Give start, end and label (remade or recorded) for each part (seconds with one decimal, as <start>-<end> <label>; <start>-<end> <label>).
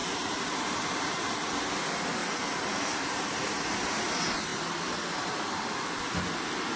0.0-1.3 remade; 1.3-2.2 recorded; 2.2-4.1 remade; 4.1-6.8 recorded